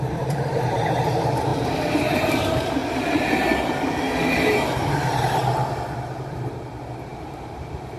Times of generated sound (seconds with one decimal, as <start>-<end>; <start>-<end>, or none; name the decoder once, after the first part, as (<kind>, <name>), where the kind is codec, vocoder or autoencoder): 0.0-2.8 (vocoder, BigVGAN v2); 6.0-8.0